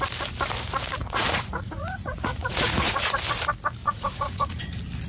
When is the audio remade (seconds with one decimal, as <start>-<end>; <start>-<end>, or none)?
1.0-2.9; 3.8-4.6